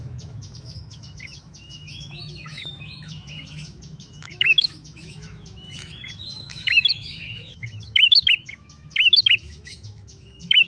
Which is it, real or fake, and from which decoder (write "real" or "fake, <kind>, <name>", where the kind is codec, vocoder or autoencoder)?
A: fake, autoencoder, DAC-VAE